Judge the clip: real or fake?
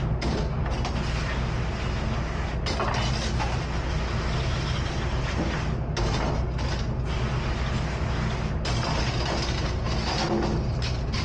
real